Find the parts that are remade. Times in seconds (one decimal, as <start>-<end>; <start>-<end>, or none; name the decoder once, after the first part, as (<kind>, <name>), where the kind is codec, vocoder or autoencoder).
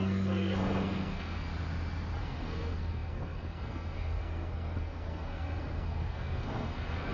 0.0-1.5 (codec, SNAC); 2.2-7.1